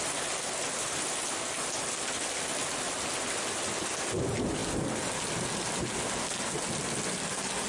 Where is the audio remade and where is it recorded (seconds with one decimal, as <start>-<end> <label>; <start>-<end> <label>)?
0.0-7.7 recorded